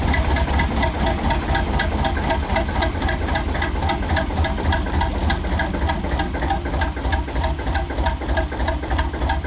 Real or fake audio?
real